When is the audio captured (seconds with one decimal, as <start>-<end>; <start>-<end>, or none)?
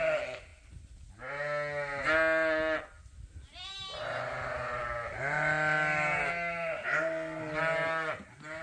0.0-8.6